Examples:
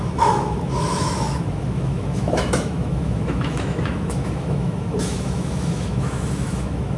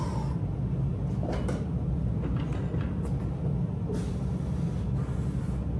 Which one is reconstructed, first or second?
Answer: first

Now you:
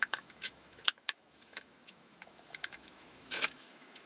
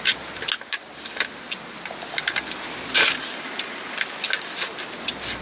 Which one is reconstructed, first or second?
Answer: first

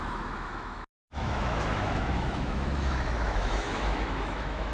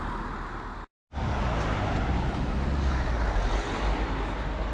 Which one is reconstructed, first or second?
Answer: first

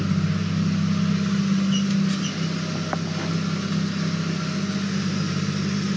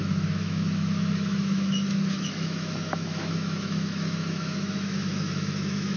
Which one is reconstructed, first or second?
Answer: second